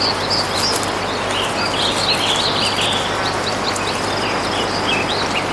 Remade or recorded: recorded